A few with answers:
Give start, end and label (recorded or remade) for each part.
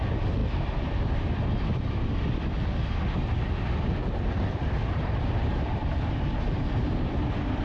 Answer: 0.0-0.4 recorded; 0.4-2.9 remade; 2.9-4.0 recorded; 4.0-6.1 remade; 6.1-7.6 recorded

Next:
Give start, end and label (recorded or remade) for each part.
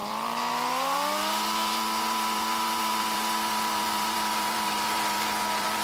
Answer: 0.0-5.8 remade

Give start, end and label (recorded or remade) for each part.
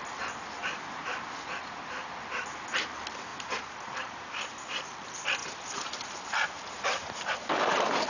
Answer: 0.0-3.3 recorded; 3.3-4.5 remade; 4.5-5.4 recorded; 5.4-7.3 remade; 7.3-8.1 recorded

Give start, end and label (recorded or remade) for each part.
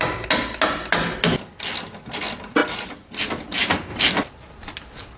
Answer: 0.0-5.2 recorded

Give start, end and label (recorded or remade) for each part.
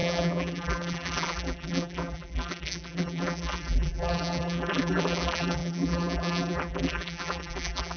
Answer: 0.0-8.0 remade